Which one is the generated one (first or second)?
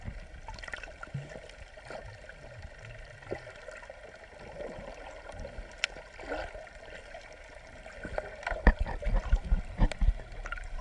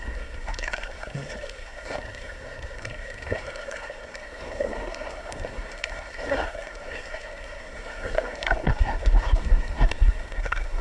second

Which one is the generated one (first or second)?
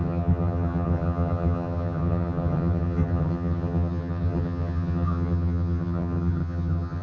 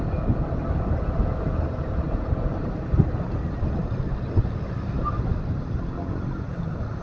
first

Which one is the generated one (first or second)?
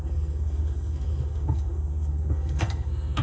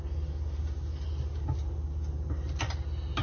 first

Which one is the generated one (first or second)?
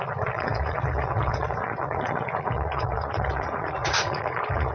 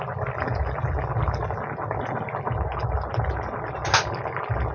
first